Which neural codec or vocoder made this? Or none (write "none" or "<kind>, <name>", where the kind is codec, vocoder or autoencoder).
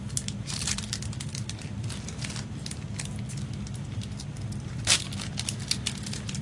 none